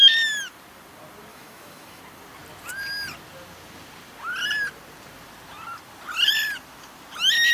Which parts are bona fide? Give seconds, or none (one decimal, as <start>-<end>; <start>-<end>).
0.0-1.3; 2.0-7.5